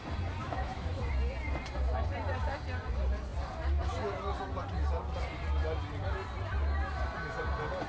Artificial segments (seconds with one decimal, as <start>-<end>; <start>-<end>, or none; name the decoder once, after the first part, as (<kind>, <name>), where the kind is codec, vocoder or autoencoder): 0.4-1.0 (autoencoder, DAC-VAE)